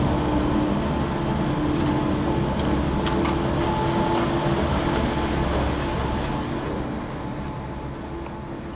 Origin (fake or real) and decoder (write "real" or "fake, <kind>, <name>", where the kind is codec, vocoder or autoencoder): real